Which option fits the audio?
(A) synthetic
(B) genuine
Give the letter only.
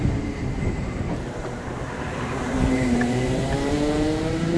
A